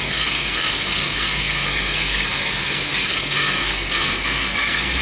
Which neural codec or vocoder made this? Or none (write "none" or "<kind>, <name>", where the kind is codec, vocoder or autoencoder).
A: codec, SNAC